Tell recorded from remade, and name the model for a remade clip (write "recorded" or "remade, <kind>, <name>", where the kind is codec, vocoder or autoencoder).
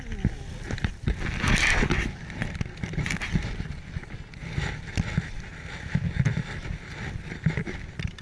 recorded